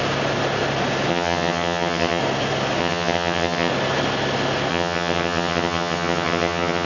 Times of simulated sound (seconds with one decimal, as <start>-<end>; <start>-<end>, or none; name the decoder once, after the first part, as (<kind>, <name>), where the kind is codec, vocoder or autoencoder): 1.1-2.2 (vocoder, HiFi-GAN); 2.8-3.7; 4.7-6.9